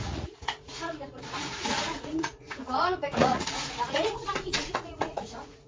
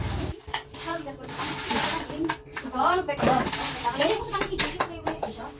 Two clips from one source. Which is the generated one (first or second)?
first